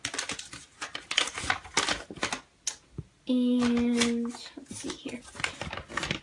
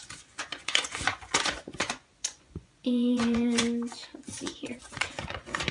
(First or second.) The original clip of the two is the first